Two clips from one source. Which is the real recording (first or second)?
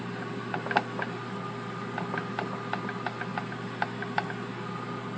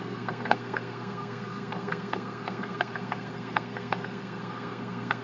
first